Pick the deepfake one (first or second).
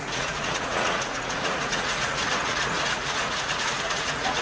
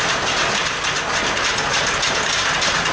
first